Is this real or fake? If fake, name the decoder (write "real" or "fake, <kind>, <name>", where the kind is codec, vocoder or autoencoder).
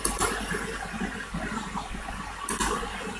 real